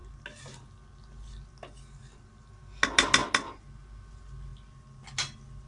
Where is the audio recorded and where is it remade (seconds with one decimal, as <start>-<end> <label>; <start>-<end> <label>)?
0.0-5.7 recorded